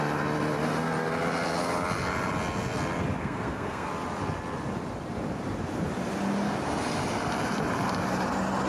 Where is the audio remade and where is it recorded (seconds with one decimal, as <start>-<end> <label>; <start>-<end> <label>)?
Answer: 0.0-3.2 recorded; 3.2-3.9 remade; 3.9-8.7 recorded